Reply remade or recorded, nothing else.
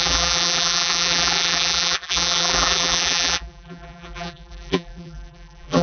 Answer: remade